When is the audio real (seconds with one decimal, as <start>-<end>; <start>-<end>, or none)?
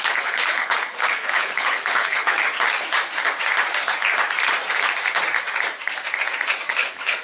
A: 2.4-6.7